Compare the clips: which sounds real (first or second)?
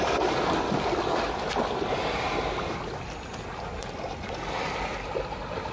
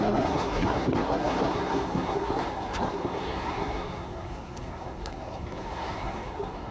first